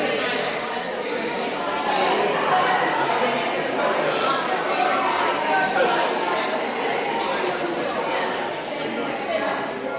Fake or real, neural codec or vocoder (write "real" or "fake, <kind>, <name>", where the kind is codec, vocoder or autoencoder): real